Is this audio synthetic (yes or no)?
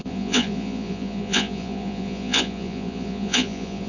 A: yes